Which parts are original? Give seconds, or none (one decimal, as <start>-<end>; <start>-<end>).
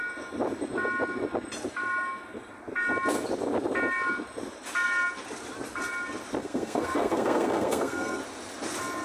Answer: 0.0-6.4; 8.2-9.0